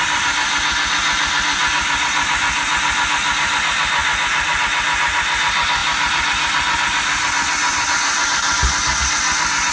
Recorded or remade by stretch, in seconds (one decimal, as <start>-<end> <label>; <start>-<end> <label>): 0.0-9.7 recorded